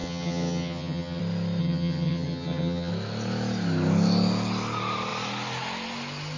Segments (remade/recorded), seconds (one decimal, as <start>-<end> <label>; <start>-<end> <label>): 0.0-1.2 remade; 1.2-1.6 recorded; 1.6-2.9 remade; 2.9-6.4 recorded